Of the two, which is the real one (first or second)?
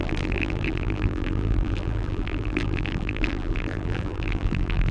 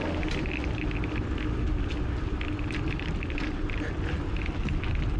second